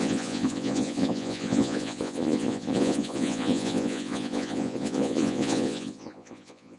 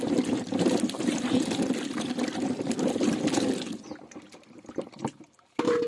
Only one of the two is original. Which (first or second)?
second